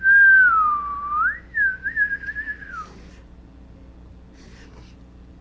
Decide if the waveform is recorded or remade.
recorded